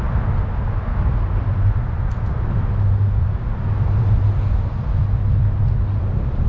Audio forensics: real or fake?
real